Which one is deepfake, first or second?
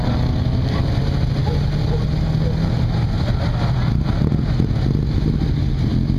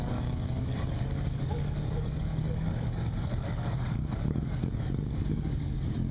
second